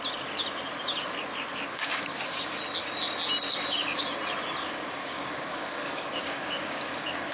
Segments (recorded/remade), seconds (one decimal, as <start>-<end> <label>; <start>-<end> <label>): 0.0-1.7 recorded; 1.7-2.6 remade; 2.6-4.6 recorded; 4.6-7.3 remade